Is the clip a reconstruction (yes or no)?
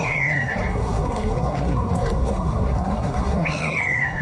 yes